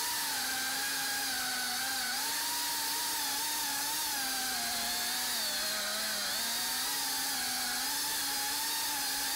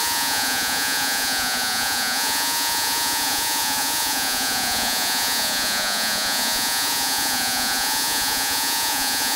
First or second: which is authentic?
first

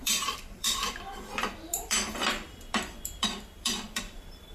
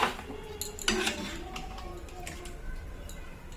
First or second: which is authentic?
second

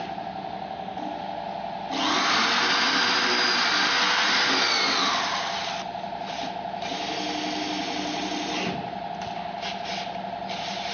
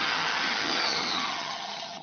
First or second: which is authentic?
first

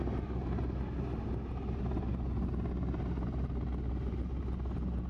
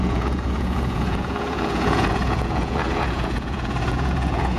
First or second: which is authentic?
first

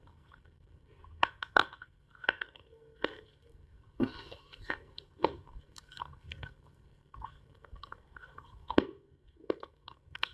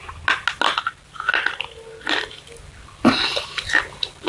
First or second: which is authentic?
second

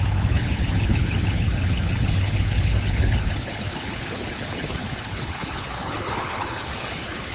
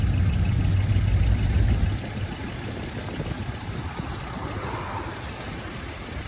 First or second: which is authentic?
second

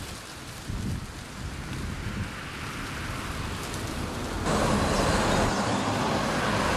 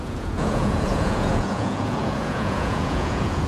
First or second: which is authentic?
first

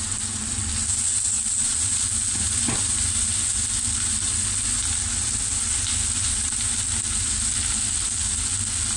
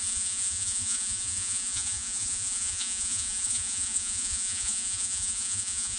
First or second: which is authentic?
first